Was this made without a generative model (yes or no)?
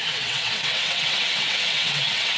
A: no